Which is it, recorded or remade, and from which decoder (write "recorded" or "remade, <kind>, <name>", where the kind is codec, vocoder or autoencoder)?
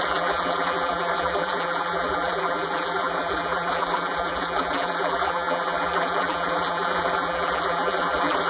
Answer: remade, vocoder, BigVGAN v2